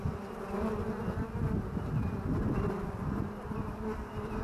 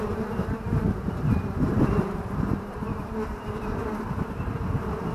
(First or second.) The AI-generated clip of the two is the second